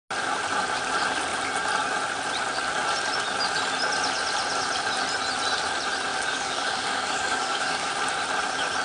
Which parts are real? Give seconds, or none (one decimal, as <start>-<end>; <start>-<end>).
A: 0.0-6.1; 7.9-8.8